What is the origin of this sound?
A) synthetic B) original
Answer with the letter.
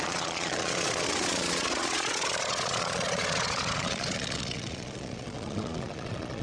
A